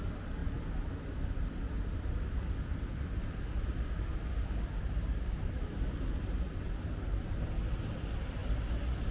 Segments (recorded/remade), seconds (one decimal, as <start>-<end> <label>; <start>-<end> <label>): 0.0-9.1 recorded